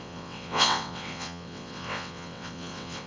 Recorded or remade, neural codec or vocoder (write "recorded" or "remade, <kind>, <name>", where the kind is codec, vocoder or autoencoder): remade, vocoder, WaveNeXt